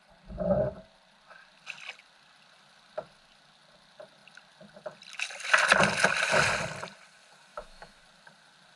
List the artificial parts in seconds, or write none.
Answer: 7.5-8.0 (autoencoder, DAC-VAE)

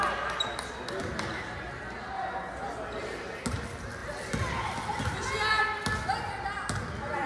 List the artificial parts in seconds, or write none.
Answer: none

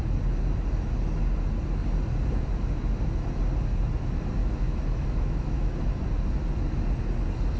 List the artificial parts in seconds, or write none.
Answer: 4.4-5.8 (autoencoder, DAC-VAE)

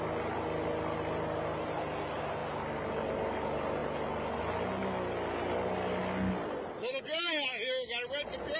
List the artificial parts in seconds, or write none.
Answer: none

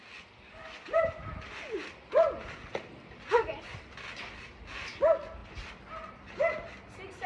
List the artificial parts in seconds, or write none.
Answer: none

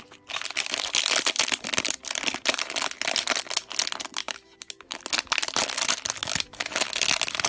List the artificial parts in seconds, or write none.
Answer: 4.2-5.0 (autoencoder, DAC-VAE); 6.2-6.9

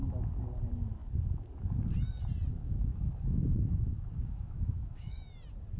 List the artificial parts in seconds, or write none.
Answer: 2.5-5.2 (autoencoder, DAC-VAE)